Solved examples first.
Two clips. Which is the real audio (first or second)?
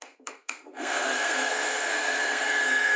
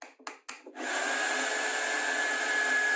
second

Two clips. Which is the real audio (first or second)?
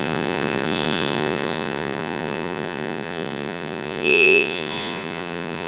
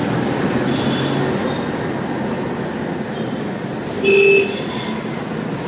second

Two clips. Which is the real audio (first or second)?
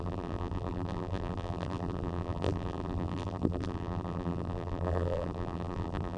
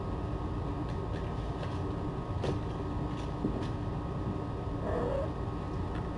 second